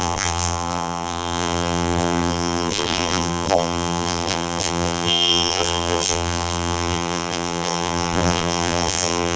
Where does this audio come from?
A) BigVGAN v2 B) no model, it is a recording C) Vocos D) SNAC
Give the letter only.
A